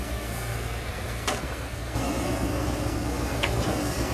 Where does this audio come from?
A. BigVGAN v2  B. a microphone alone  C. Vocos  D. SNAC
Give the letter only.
D